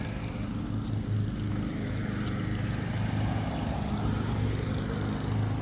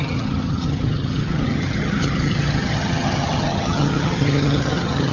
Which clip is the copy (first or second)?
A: second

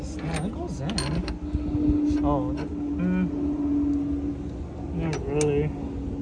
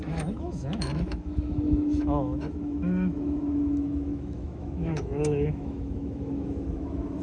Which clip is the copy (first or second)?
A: second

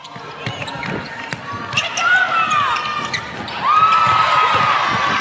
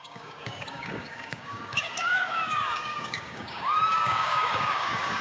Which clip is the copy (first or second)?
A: second